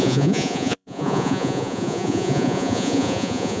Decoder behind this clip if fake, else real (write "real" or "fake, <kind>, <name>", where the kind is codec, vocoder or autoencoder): fake, vocoder, Vocos